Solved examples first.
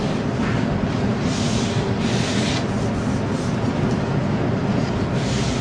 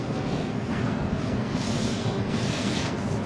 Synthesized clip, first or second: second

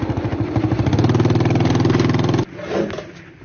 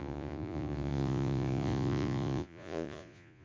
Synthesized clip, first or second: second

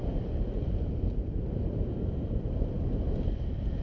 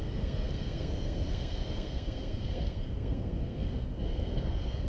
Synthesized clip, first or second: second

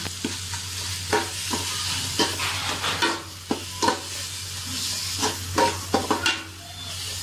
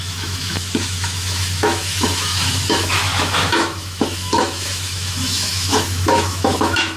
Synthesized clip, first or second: second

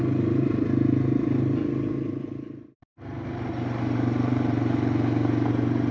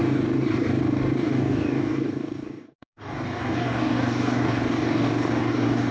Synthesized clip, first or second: second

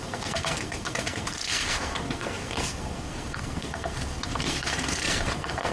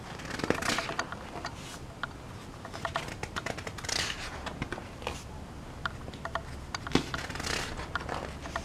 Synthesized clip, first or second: first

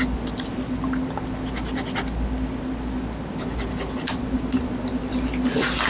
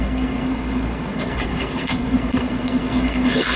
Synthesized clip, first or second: second